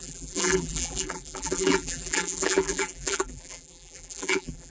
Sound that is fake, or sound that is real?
fake